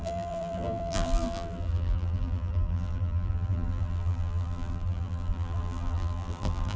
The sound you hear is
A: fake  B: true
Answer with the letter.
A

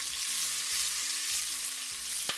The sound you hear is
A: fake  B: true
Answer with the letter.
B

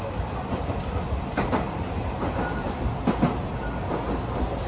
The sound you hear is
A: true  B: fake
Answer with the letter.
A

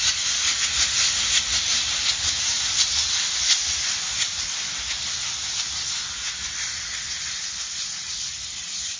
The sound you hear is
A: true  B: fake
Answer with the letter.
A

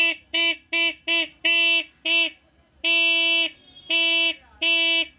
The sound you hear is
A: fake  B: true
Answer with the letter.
B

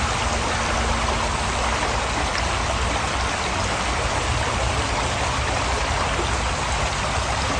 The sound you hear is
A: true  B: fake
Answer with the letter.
A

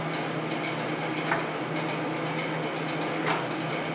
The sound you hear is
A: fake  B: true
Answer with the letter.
B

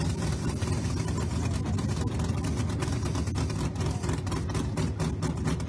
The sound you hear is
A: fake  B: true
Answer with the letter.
B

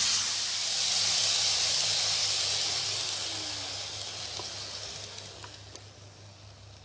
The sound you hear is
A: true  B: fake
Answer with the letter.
A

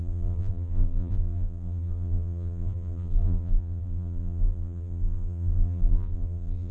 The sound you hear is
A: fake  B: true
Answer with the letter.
A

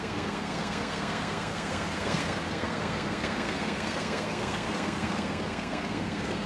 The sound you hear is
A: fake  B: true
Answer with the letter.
A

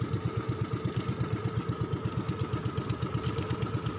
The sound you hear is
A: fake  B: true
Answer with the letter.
B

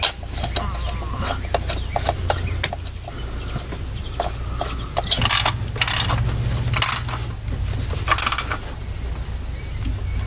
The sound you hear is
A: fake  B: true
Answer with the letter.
B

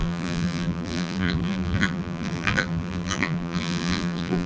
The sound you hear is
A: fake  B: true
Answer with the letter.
A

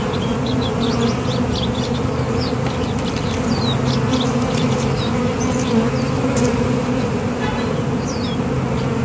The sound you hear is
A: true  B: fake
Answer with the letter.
A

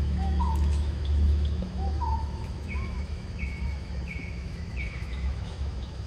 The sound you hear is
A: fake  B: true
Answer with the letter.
A